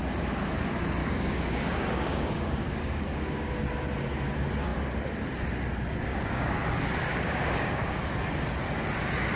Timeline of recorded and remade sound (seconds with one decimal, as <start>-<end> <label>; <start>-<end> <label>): 0.0-1.0 recorded; 1.0-3.5 remade; 3.5-6.1 recorded; 6.1-6.6 remade; 6.6-7.1 recorded; 7.1-8.0 remade; 8.0-9.4 recorded